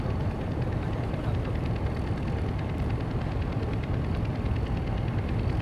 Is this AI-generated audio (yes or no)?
no